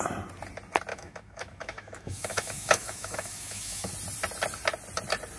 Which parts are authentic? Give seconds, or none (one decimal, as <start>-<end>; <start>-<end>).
0.0-0.9; 3.9-5.4